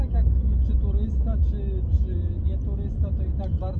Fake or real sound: real